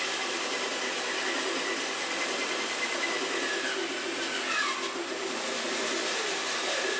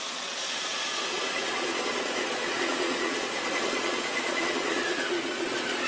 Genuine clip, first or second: first